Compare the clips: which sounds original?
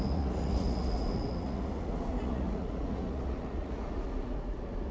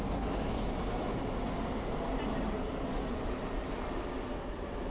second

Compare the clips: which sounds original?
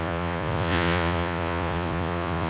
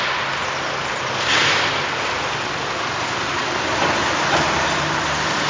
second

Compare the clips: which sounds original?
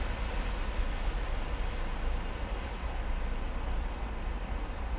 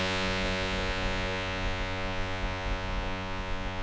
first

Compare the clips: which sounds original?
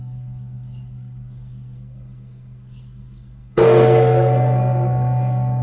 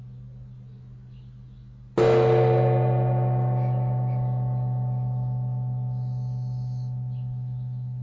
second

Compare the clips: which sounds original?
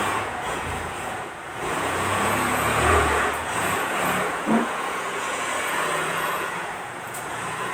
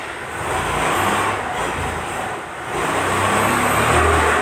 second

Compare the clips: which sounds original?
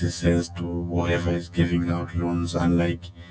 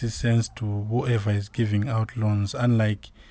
second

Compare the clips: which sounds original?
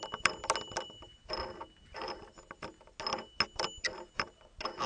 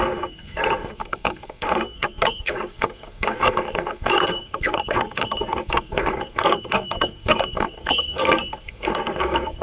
first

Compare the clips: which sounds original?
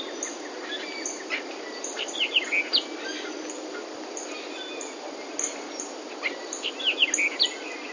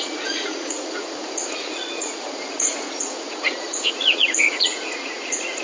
first